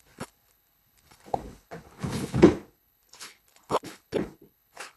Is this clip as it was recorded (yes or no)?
no